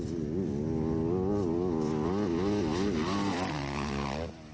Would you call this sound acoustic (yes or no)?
yes